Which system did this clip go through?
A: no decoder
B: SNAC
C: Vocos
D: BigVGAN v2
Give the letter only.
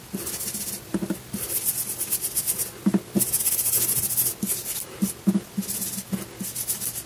A